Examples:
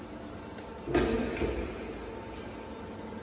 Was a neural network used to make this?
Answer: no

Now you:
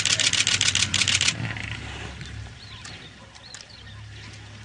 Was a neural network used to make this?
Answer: no